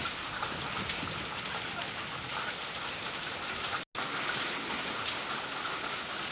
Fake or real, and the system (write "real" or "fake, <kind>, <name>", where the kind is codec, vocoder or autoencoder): real